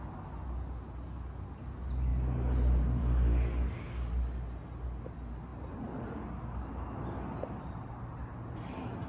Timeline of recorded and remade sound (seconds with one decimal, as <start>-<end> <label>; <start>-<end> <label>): 0.0-9.1 recorded